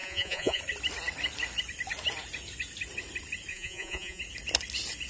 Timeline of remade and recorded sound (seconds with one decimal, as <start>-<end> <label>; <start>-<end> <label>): 0.0-0.6 remade; 0.6-3.5 recorded; 3.5-4.2 remade; 4.2-5.1 recorded